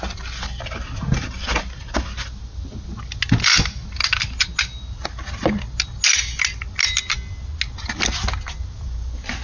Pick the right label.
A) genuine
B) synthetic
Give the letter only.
A